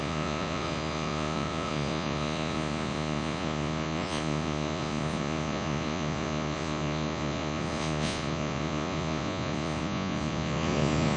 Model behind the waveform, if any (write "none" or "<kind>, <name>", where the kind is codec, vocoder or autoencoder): vocoder, Vocos